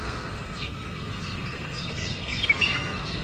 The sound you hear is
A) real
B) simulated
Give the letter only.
B